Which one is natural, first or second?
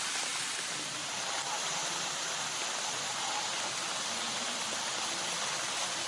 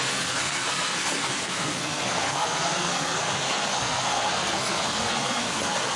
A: first